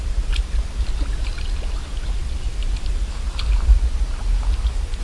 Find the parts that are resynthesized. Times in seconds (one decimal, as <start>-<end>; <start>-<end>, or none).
none